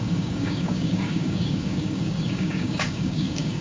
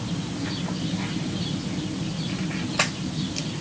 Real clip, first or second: second